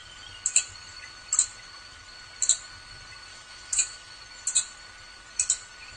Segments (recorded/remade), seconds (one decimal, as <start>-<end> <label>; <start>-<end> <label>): 0.0-3.3 recorded; 3.3-4.2 remade; 4.2-6.0 recorded